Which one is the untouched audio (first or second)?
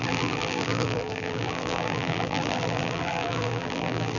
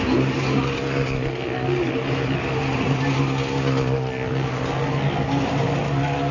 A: second